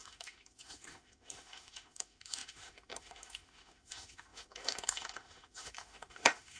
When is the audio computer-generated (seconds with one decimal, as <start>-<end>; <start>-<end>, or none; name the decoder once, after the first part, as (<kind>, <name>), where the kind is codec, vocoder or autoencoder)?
0.0-6.6 (autoencoder, DAC-VAE)